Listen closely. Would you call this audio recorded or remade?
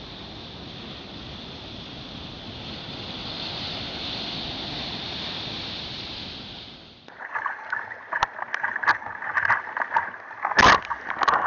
recorded